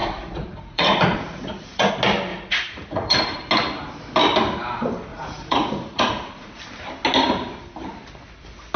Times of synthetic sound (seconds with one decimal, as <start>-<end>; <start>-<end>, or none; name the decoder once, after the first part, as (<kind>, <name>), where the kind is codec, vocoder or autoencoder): 0.0-1.9 (vocoder, Vocos); 2.3-3.5; 5.1-6.6